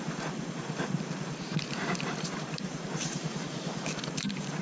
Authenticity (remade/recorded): remade